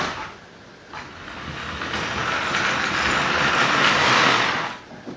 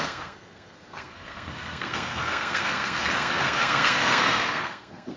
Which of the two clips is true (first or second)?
first